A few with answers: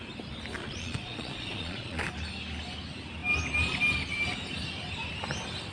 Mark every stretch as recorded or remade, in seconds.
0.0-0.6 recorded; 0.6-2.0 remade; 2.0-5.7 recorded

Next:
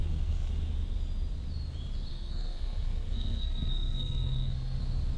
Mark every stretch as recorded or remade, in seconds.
0.0-0.5 remade; 0.5-2.1 recorded; 2.1-4.8 remade; 4.8-5.2 recorded

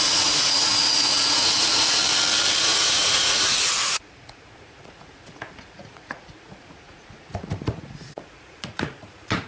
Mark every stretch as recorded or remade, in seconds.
0.0-2.0 remade; 2.0-2.6 recorded; 2.6-9.5 remade